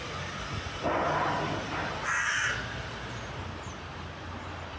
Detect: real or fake real